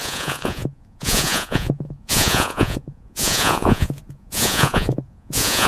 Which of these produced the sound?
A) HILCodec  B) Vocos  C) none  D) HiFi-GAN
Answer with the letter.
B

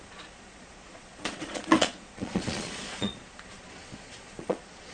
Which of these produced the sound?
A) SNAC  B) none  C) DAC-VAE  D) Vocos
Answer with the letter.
D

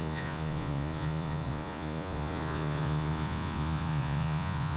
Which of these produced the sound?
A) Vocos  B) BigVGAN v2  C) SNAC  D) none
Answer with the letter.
A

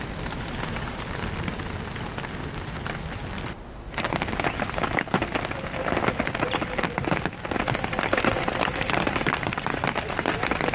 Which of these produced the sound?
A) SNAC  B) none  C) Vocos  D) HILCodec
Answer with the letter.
B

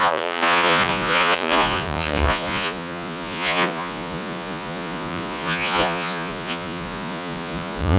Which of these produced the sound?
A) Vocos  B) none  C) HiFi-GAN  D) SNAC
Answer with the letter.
A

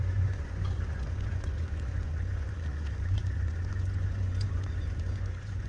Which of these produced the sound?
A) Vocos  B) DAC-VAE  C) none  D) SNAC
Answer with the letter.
A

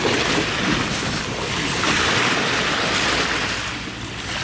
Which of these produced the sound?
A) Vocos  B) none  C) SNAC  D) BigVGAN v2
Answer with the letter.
B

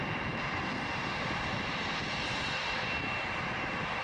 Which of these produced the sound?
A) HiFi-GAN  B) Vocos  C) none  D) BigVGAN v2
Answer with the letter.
C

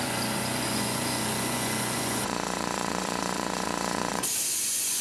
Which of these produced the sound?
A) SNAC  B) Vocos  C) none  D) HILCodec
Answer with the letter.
B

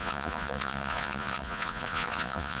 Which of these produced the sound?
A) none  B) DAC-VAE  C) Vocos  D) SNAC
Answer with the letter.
C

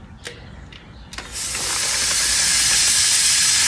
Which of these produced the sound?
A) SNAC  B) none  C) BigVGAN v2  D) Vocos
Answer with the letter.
B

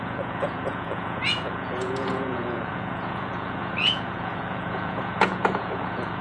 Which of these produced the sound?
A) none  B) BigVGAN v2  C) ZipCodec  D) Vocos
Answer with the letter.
D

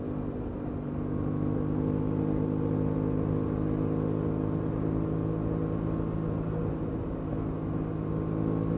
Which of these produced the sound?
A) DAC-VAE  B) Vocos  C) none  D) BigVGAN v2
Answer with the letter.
C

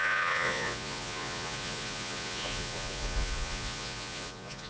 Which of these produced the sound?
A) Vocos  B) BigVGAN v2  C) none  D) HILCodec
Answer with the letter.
A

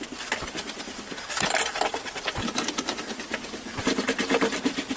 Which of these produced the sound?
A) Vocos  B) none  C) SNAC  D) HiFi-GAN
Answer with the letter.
B